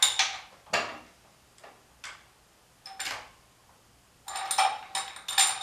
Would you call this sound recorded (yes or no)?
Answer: yes